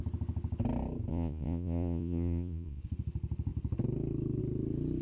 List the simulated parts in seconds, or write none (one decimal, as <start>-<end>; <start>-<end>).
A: 1.1-2.8